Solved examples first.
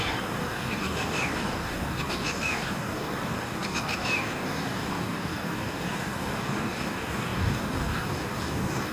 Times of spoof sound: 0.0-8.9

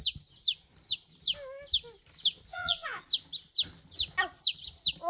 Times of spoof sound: 2.5-3.0

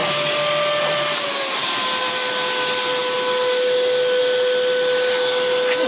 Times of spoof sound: none

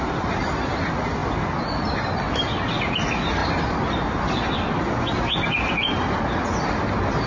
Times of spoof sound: none

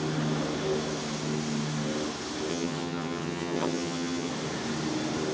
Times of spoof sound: 2.5-4.3

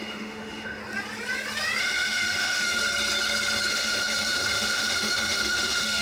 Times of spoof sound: 0.0-0.8; 1.8-2.8; 3.7-6.0

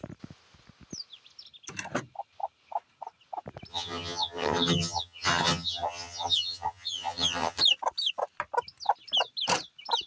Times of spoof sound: 3.7-7.6

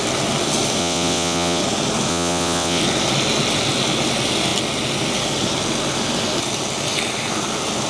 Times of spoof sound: 0.8-1.6; 2.1-2.8